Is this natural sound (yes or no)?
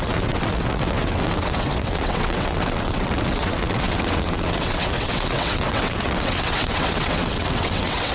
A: no